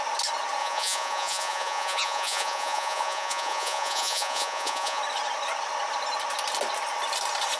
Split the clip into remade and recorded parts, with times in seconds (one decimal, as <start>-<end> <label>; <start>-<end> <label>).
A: 0.0-0.6 recorded; 0.6-5.0 remade; 5.0-7.6 recorded